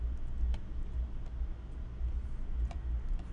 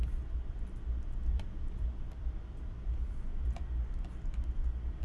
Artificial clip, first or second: second